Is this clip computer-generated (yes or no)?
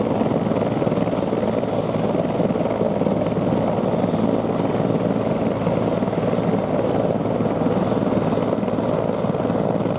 no